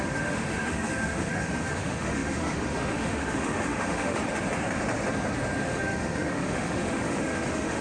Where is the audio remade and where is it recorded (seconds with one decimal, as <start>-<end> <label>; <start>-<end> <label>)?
0.0-4.2 remade; 4.2-5.6 recorded; 5.6-7.8 remade